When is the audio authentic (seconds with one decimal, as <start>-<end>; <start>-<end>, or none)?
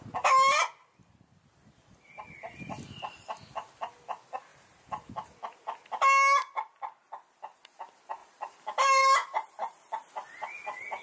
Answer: 0.0-4.5; 5.1-8.2; 10.1-11.0